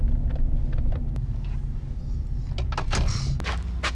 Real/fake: real